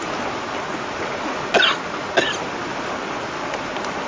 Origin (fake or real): real